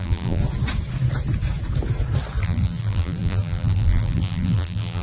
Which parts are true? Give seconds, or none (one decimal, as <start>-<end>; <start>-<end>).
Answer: 0.4-2.4